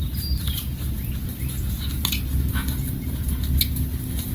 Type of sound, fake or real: real